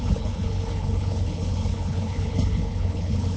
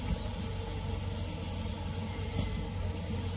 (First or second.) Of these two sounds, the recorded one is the second